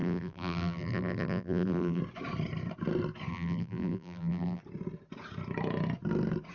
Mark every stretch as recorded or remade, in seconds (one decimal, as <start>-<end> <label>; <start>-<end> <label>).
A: 0.0-2.0 remade; 2.0-3.3 recorded; 3.3-4.6 remade; 4.6-6.5 recorded